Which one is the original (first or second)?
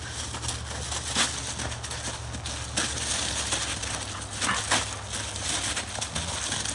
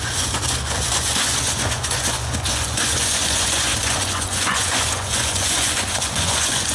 first